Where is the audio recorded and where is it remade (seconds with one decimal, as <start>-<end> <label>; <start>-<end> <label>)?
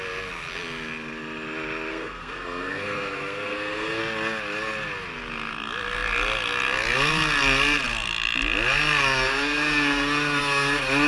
0.0-1.9 recorded; 1.9-4.0 remade; 4.0-11.1 recorded